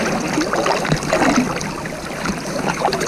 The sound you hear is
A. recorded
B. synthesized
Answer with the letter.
A